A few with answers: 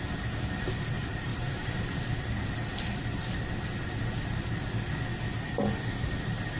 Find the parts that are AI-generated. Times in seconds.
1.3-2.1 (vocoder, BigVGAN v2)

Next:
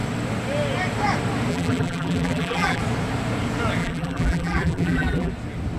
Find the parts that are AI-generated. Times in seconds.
1.5-2.8 (vocoder, BigVGAN v2); 3.8-5.3

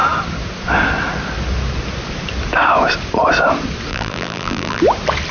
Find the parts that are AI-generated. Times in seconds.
3.9-4.8 (vocoder, BigVGAN v2)

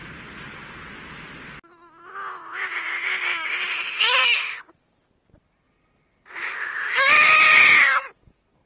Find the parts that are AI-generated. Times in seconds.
4.0-5.0 (vocoder, BigVGAN v2); 6.6-8.7